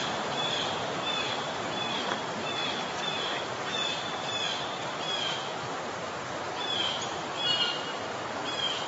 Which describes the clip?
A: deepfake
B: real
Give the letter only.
A